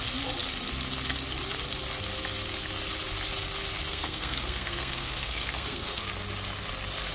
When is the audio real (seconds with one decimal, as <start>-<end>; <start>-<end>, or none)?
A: 0.0-3.9; 6.1-7.1

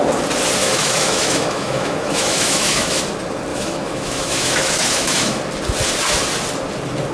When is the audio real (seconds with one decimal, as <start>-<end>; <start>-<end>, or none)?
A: 0.0-0.6; 3.0-3.5; 5.4-7.1

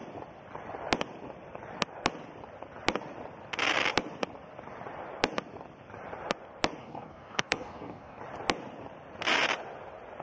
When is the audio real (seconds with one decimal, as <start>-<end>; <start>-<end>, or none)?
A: 0.0-6.8; 8.2-10.2

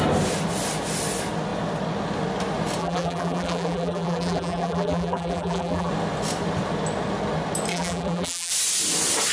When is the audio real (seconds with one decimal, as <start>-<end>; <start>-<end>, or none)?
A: 0.0-2.8; 5.9-7.7; 8.5-9.3

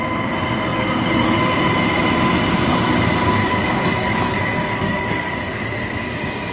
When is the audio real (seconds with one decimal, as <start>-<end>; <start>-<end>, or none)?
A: 0.0-0.7; 1.4-3.4; 5.6-6.5

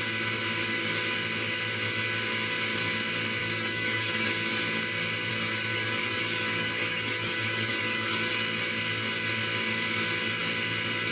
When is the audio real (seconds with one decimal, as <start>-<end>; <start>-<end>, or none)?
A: 0.0-3.4; 4.5-5.3; 8.3-11.1